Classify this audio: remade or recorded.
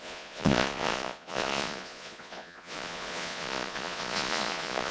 remade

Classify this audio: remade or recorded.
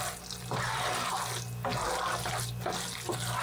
recorded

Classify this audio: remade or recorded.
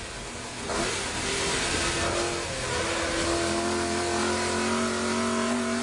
recorded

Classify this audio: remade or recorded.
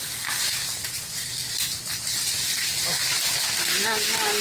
recorded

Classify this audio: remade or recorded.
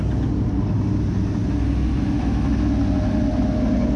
recorded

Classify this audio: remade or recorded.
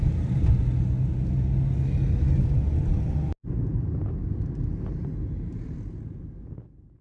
recorded